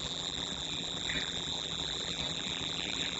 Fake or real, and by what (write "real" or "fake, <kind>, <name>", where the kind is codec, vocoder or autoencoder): fake, vocoder, BigVGAN v2